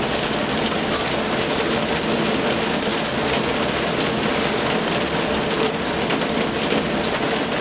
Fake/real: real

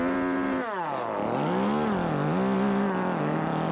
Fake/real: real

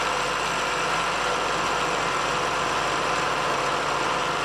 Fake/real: real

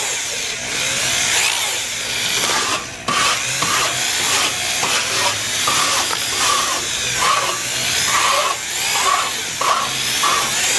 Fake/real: real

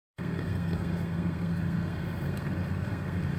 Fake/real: fake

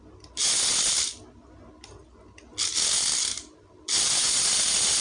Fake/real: real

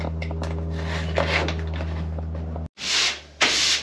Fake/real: real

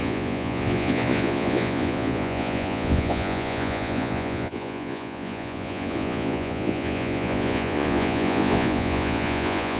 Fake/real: fake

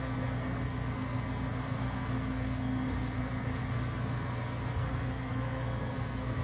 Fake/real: fake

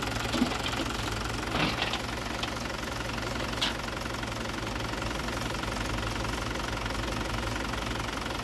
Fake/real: real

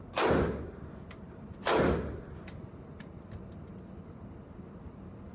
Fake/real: real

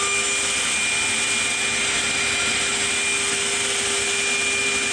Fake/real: real